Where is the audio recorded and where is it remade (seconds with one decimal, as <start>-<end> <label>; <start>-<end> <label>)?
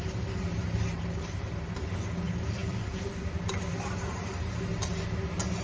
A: 0.0-4.7 remade; 4.7-5.6 recorded